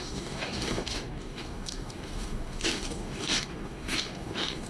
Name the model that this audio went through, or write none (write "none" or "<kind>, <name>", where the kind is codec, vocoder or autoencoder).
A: codec, DAC